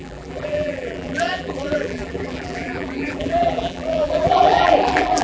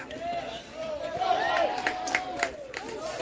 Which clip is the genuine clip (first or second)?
second